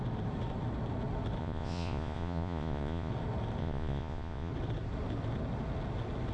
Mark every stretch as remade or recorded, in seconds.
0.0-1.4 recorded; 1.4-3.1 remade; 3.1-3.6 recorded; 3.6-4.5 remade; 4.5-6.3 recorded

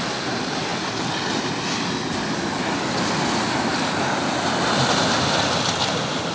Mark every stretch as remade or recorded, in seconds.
0.0-6.3 recorded